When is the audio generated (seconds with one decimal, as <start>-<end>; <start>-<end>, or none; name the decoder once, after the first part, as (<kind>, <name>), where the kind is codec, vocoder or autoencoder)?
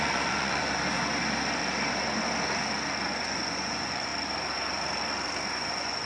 0.0-0.6 (vocoder, Vocos); 3.0-4.1; 5.5-6.1